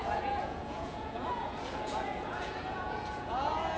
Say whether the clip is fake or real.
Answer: fake